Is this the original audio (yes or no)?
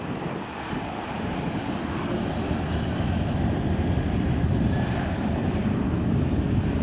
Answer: yes